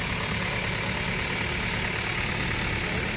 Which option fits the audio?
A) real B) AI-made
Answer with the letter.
A